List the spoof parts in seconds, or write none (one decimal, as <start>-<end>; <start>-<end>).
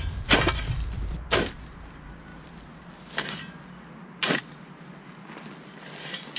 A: none